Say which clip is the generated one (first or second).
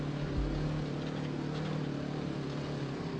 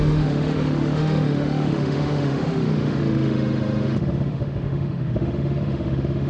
second